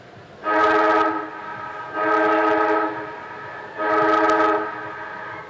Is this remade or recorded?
recorded